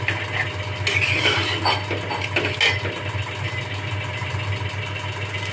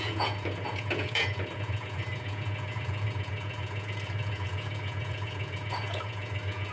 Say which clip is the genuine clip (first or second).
first